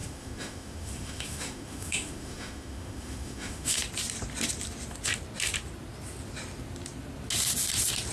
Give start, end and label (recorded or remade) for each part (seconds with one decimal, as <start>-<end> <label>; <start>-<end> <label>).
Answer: 0.0-3.8 remade; 3.8-8.1 recorded